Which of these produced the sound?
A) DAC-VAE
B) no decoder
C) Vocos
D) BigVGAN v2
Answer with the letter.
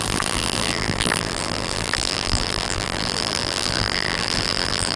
D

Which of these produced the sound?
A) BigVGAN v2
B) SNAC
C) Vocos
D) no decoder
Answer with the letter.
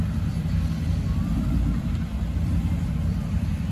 A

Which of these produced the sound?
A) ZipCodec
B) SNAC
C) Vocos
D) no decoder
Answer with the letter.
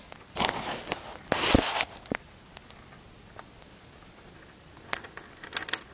D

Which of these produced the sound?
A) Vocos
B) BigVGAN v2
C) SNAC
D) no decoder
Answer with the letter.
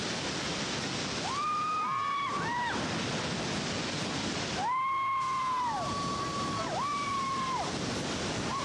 D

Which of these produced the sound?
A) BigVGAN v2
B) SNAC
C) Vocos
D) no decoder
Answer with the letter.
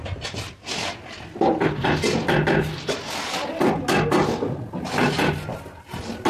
D